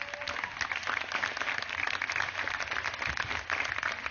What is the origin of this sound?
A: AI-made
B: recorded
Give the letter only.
B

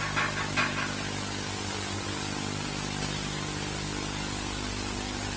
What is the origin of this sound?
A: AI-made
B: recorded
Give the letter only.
B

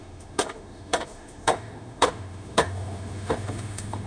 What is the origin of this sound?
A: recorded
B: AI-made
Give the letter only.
B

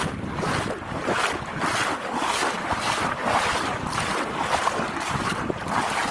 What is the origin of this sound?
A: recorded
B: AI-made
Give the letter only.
A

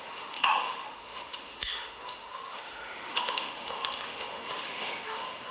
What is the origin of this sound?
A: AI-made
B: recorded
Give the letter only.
A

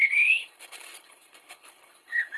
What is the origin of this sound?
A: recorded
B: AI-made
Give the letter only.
B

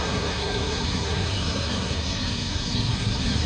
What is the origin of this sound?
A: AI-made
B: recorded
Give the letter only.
A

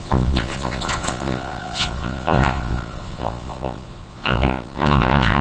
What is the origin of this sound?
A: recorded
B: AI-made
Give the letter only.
B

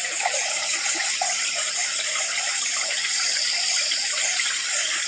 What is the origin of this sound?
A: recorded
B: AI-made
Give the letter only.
B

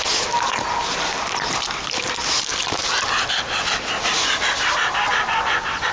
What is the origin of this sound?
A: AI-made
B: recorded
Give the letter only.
B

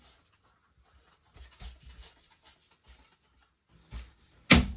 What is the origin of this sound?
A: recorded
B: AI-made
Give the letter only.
A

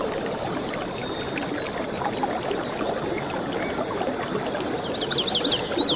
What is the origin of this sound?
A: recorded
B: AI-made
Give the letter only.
A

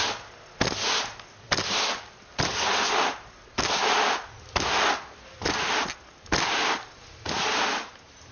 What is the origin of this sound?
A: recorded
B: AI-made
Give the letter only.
A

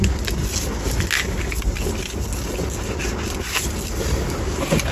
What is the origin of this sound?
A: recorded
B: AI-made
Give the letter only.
A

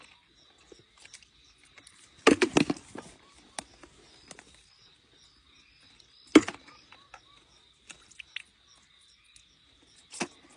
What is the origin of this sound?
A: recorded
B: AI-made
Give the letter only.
A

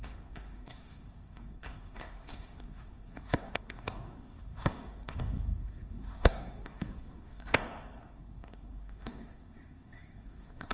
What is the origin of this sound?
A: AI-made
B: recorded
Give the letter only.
A